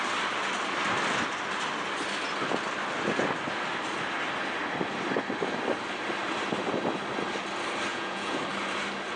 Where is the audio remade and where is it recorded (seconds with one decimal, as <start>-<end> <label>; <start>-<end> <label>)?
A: 0.0-7.9 recorded; 7.9-8.4 remade; 8.4-9.2 recorded